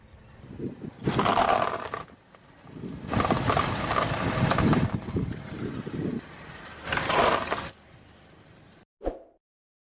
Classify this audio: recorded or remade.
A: recorded